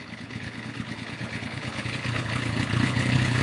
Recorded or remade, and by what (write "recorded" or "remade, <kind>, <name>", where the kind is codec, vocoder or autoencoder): remade, codec, HILCodec